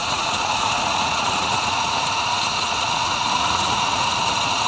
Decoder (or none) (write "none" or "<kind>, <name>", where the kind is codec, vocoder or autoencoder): vocoder, Vocos